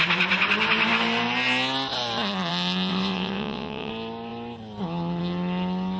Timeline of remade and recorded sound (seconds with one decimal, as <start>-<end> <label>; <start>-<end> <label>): 0.0-2.9 recorded; 2.9-3.9 remade; 3.9-6.0 recorded